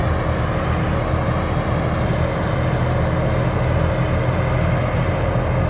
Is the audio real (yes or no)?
yes